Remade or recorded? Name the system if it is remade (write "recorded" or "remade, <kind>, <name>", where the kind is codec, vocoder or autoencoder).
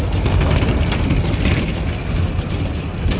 recorded